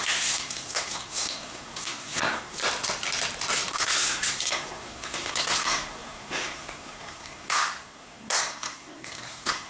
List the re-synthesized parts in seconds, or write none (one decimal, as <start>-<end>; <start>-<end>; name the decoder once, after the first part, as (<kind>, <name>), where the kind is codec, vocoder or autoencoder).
0.0-2.6 (codec, SNAC); 3.7-9.7